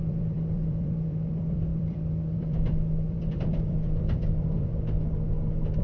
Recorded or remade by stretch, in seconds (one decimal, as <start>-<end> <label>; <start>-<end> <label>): 0.0-4.7 remade; 4.7-5.8 recorded

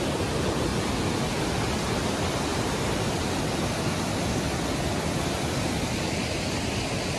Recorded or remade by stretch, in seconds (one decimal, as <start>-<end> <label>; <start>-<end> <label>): 0.0-0.7 recorded; 0.7-1.4 remade; 1.4-7.2 recorded

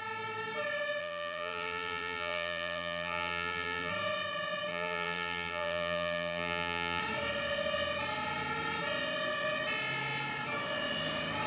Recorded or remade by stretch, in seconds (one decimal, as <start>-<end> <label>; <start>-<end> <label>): 0.0-1.0 recorded; 1.0-3.9 remade; 3.9-4.7 recorded; 4.7-7.0 remade; 7.0-11.5 recorded

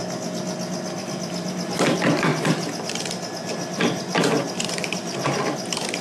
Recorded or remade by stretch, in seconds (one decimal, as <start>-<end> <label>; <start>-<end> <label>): 0.0-1.0 recorded; 1.0-2.3 remade; 2.3-4.6 recorded; 4.6-6.0 remade